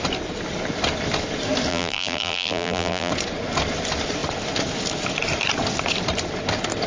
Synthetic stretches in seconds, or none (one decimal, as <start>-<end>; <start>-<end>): 1.7-3.1